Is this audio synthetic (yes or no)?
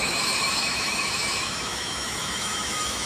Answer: yes